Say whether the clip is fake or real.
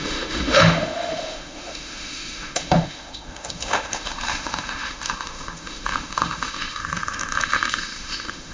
fake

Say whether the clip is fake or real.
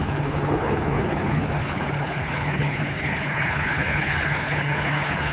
fake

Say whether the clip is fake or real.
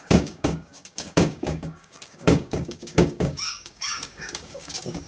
fake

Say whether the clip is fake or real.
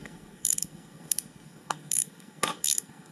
fake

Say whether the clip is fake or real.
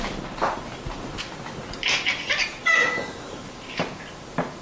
real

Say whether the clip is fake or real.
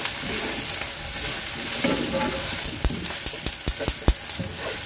real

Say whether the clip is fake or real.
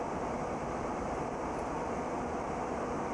real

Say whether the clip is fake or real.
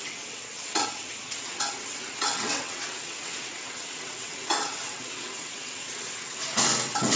fake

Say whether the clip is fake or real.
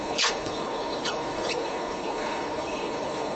fake